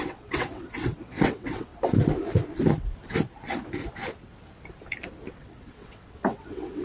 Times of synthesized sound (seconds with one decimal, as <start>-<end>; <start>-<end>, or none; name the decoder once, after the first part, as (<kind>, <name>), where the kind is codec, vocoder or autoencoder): 0.0-1.7 (vocoder, WaveNeXt); 5.3-6.8